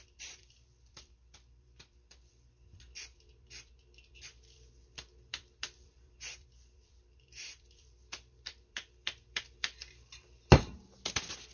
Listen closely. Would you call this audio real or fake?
fake